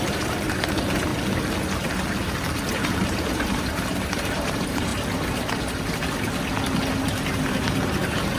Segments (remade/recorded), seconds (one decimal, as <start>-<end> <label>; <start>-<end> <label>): 0.0-1.1 remade; 1.1-2.7 recorded; 2.7-4.9 remade; 4.9-7.0 recorded; 7.0-8.4 remade